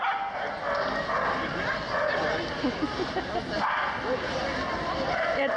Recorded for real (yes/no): yes